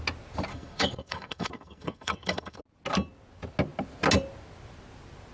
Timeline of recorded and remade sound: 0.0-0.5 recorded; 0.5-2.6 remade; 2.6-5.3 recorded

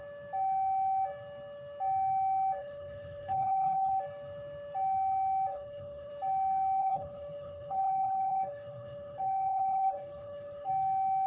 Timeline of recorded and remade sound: 0.0-2.6 recorded; 2.6-3.9 remade; 3.9-5.5 recorded; 5.5-6.1 remade; 6.1-6.8 recorded; 6.8-10.7 remade; 10.7-11.3 recorded

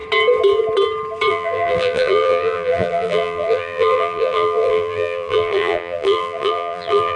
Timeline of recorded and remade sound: 0.0-1.3 recorded; 1.3-7.2 remade

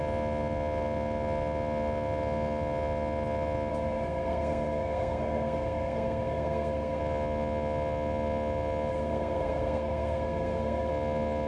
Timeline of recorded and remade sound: 0.0-3.7 recorded; 3.7-7.0 remade; 7.0-8.9 recorded; 8.9-10.9 remade; 10.9-11.5 recorded